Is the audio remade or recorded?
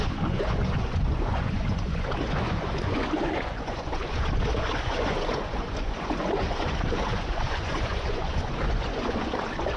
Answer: remade